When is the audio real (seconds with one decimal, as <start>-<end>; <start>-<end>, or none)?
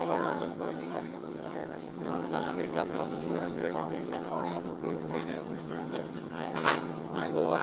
none